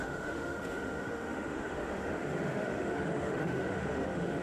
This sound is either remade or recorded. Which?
remade